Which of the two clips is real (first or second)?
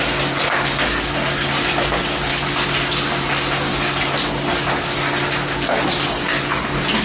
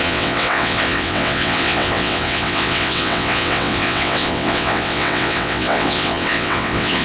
first